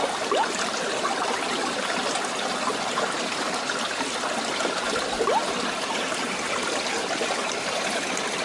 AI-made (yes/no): no